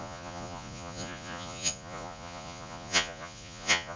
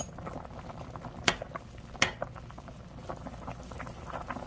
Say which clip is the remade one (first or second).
first